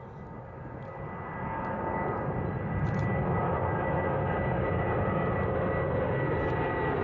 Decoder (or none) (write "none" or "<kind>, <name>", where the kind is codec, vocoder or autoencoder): none